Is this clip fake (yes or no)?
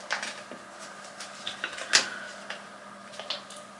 no